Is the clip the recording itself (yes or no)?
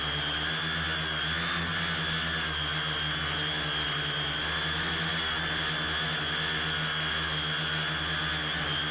yes